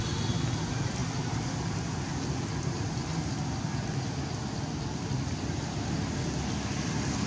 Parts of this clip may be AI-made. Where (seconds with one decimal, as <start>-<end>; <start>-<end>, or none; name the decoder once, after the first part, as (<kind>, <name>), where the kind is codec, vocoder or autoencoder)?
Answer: none